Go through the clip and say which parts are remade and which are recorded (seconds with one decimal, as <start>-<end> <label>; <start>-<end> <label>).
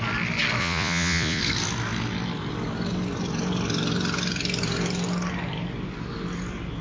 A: 0.0-0.6 recorded; 0.6-1.4 remade; 1.4-6.8 recorded